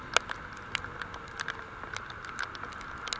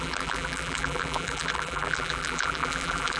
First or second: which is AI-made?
second